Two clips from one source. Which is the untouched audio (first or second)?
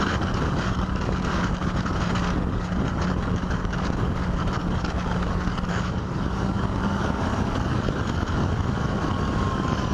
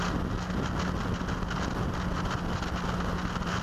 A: second